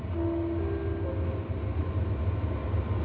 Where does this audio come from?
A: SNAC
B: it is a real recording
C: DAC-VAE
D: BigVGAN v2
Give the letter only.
B